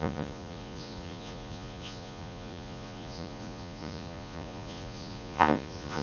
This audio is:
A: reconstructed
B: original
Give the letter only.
A